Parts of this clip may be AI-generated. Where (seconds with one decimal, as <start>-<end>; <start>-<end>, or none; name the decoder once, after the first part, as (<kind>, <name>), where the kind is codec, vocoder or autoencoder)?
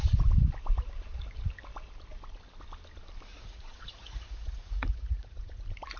3.3-5.6 (vocoder, Vocos)